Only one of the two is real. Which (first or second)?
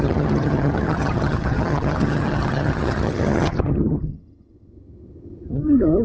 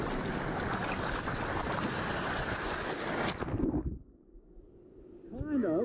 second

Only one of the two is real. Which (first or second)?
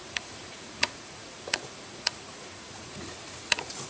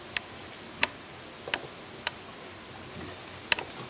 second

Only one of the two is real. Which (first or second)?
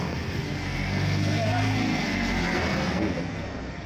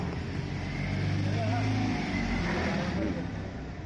second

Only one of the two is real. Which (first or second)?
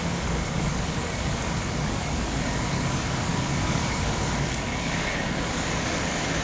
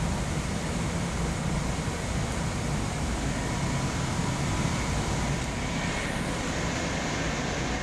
second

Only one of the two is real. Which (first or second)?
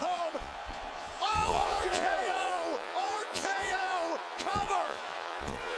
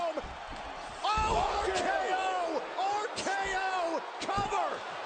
second